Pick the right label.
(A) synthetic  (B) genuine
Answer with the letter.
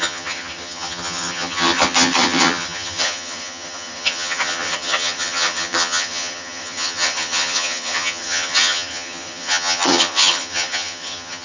A